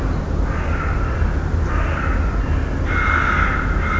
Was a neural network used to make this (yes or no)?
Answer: no